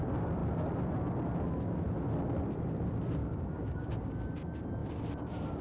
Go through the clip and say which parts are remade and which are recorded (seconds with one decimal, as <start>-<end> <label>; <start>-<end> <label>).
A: 0.0-3.2 recorded; 3.2-4.1 remade; 4.1-5.6 recorded